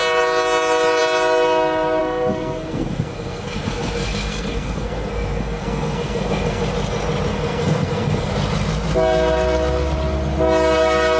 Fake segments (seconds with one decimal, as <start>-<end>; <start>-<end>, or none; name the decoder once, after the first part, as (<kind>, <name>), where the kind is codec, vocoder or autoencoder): 2.0-6.6 (codec, SNAC); 7.3-8.3